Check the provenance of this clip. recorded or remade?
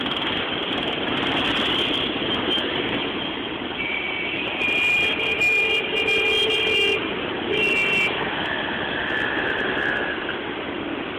recorded